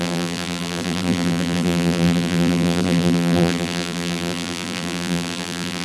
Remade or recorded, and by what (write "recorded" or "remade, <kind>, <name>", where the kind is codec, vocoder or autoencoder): remade, vocoder, BigVGAN v2